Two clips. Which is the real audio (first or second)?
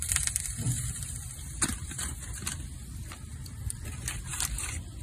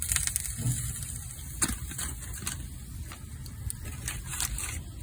second